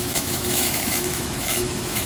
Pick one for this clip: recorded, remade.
remade